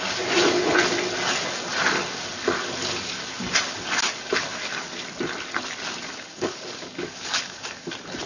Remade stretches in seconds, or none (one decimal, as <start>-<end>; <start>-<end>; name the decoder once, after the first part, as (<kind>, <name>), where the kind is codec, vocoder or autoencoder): 6.3-7.9 (codec, DAC)